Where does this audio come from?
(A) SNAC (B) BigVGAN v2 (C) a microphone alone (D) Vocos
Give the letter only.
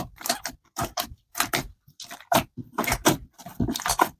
B